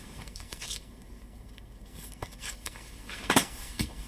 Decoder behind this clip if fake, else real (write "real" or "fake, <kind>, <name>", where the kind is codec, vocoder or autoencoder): fake, codec, SNAC